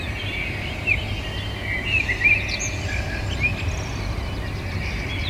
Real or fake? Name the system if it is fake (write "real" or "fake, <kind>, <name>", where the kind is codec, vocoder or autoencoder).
real